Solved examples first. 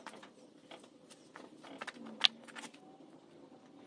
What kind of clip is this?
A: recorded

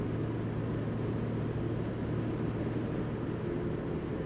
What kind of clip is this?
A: recorded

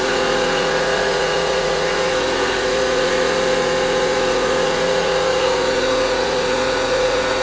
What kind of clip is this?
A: remade